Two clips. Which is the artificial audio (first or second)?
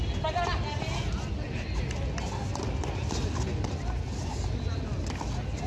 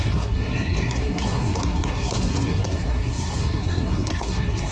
second